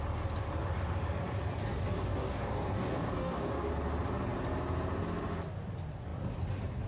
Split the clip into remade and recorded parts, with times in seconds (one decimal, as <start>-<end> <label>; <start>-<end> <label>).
0.0-1.7 recorded; 1.7-3.7 remade; 3.7-6.9 recorded